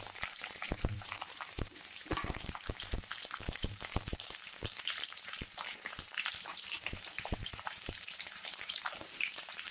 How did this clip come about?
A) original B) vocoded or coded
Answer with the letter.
B